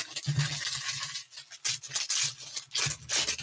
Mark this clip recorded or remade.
recorded